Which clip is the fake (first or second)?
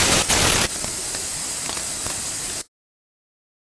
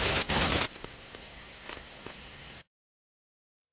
second